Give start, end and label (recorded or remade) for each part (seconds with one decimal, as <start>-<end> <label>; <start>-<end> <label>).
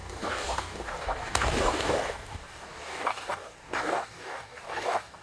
0.0-5.2 remade